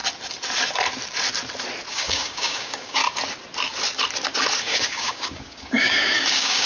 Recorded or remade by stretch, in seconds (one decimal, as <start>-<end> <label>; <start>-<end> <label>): 0.0-1.9 recorded; 1.9-3.0 remade; 3.0-4.6 recorded; 4.6-6.7 remade